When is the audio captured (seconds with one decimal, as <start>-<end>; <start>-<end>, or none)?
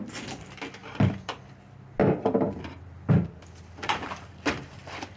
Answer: 0.0-0.8; 1.4-2.0; 3.1-3.8; 4.8-5.2